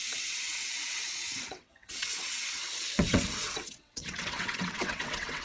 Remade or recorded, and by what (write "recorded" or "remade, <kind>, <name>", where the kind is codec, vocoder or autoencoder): remade, vocoder, WaveNeXt